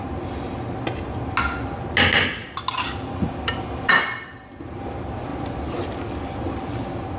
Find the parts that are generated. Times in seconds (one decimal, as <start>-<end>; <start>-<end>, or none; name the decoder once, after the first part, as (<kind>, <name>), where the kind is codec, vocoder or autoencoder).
none